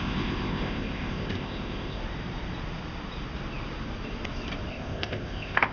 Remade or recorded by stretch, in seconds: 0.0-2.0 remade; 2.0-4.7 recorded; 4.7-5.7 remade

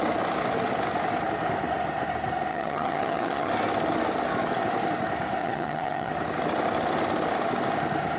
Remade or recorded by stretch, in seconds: 0.0-2.5 recorded; 2.5-3.5 remade; 3.5-5.4 recorded; 5.4-6.1 remade; 6.1-8.2 recorded